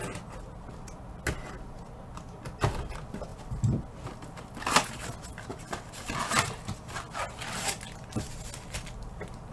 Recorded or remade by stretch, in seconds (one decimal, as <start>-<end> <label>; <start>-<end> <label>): 0.0-9.5 recorded